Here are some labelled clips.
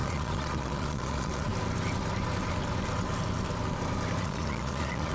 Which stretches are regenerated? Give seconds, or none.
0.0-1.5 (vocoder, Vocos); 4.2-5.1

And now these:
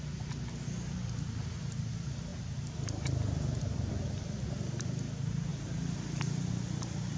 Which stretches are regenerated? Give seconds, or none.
none

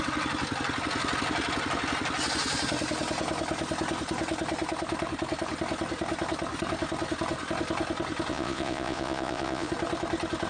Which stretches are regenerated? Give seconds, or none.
8.3-9.7 (vocoder, Vocos)

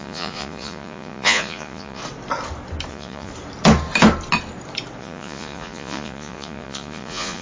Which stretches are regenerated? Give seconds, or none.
0.0-2.0 (vocoder, Vocos); 2.9-3.3; 5.0-7.4

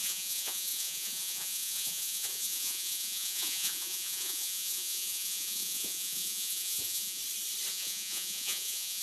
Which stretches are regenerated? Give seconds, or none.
0.0-7.2 (vocoder, Vocos); 7.7-9.0

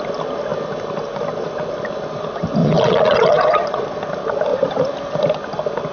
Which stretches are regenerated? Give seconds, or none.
2.6-3.8 (vocoder, Vocos)

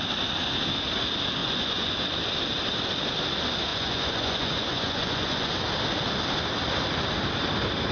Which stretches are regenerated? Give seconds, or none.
1.4-1.9 (vocoder, Vocos); 3.7-5.5

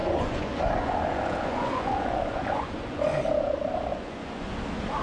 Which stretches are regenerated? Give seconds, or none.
0.0-3.0 (vocoder, Vocos); 3.9-4.5